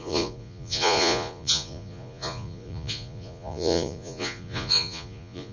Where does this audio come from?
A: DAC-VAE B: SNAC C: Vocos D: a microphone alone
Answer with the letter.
C